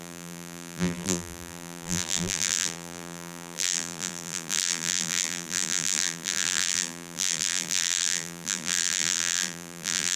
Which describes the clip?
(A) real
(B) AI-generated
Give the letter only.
B